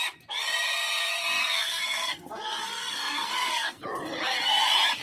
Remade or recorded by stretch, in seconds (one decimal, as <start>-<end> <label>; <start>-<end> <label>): 0.0-1.4 recorded; 1.4-3.8 remade; 3.8-5.0 recorded